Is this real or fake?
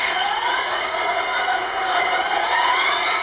fake